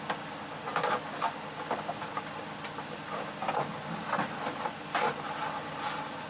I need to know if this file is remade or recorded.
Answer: recorded